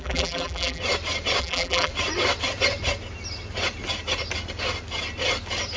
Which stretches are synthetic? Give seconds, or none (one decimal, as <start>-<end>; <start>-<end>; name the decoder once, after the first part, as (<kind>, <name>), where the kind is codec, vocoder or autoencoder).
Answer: 0.0-0.8 (vocoder, BigVGAN v2); 1.4-1.9